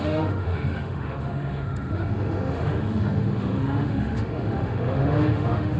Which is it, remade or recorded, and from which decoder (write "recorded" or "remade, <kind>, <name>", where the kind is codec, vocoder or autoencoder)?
remade, autoencoder, DAC-VAE